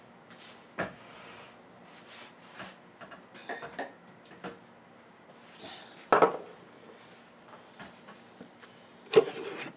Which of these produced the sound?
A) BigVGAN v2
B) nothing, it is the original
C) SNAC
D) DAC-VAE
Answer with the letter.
B